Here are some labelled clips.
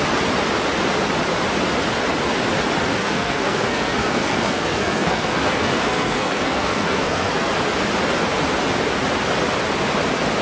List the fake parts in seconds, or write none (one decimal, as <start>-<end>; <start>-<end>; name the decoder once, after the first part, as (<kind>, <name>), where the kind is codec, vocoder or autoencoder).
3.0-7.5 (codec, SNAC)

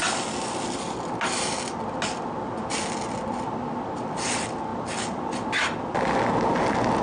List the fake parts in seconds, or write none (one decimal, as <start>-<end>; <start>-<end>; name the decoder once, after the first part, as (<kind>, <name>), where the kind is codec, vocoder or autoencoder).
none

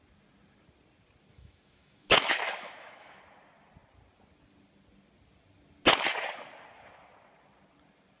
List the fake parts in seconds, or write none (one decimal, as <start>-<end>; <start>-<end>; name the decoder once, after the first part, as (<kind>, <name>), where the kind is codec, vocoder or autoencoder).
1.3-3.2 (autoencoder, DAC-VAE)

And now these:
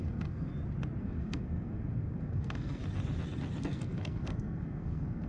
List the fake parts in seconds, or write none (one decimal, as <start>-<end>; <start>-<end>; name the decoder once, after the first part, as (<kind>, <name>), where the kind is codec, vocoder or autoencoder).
0.0-0.5 (codec, SNAC); 1.0-2.8; 3.6-5.3

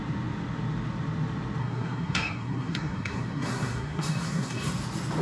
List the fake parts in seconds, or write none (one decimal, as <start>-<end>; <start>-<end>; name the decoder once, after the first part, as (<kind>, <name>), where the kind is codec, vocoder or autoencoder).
1.6-4.7 (codec, SNAC)

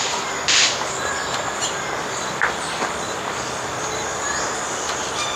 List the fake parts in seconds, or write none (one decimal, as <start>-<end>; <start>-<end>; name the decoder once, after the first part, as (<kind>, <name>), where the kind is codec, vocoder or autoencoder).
none

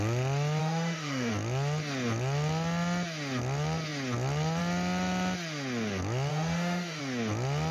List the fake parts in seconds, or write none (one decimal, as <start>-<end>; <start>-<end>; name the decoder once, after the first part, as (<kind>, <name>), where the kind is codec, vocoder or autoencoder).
0.6-1.3 (autoencoder, DAC-VAE); 6.3-7.0

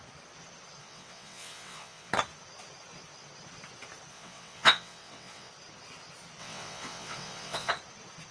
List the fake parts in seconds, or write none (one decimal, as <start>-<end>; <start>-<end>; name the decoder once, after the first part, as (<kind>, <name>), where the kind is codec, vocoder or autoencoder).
0.8-2.1 (vocoder, WaveNeXt); 4.1-5.5; 6.4-7.7